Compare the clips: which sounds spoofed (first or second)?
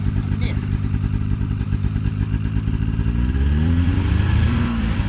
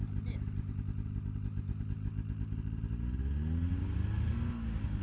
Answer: first